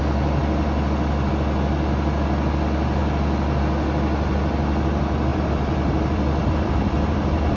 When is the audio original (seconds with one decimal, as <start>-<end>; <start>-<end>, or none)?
0.0-5.3